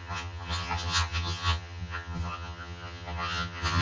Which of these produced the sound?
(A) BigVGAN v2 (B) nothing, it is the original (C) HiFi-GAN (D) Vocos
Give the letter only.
C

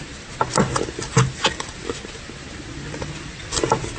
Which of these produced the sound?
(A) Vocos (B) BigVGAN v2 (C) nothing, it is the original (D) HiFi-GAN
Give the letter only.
C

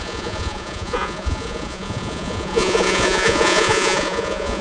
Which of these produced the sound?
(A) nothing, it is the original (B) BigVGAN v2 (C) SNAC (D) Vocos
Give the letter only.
D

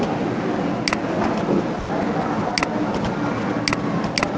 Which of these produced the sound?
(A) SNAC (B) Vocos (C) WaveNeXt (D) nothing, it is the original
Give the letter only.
D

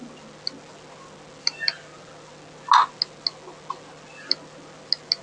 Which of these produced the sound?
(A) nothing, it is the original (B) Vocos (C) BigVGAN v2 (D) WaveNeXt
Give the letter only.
A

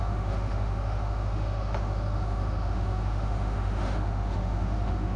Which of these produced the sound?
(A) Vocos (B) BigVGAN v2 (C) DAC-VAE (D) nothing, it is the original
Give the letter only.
C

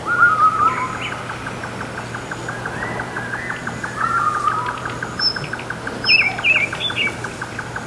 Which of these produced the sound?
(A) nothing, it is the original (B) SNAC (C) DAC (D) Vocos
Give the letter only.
A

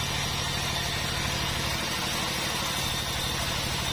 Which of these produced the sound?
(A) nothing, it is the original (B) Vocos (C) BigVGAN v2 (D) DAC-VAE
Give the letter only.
A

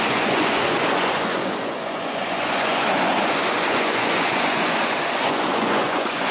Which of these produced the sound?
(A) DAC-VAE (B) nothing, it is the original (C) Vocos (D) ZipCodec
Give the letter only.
C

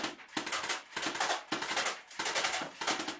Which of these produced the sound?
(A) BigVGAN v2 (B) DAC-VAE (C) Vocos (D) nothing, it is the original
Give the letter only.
D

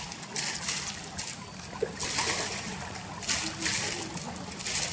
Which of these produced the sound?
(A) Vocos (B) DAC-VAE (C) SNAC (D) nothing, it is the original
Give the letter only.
D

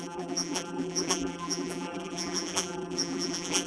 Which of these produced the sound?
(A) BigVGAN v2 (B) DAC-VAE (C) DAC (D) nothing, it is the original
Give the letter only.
A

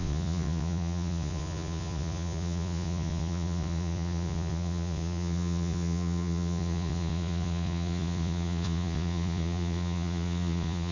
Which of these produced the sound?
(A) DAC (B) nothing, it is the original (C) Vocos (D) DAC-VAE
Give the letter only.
C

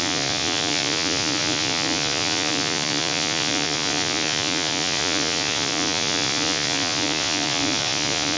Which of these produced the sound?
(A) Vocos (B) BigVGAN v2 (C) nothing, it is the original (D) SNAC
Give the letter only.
A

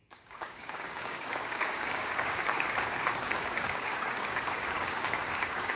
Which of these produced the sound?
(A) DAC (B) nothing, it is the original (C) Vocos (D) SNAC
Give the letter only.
A